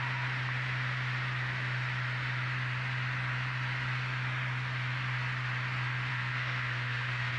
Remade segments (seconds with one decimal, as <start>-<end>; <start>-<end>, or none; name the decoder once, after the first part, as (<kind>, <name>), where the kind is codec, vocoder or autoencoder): 6.1-7.4 (codec, SNAC)